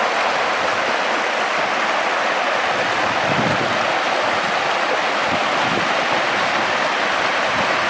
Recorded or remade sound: recorded